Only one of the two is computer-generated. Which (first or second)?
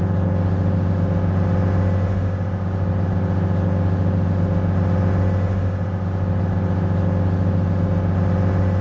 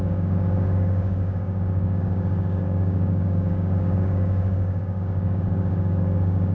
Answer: second